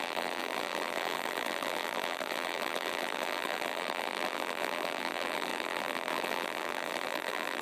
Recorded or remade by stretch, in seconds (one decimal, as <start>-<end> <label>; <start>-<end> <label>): 0.0-7.6 remade